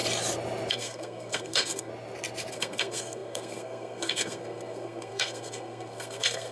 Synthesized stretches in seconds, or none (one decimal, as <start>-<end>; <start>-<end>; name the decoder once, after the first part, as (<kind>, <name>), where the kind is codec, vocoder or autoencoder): 0.7-1.9 (codec, SNAC); 2.5-6.5